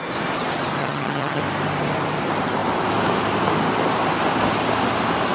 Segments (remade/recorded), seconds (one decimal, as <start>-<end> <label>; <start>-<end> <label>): 0.0-0.8 recorded; 0.8-1.4 remade; 1.4-5.3 recorded